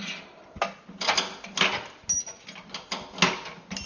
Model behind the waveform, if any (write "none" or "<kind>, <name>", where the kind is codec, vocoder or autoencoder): none